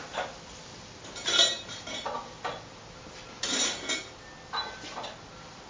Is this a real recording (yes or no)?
yes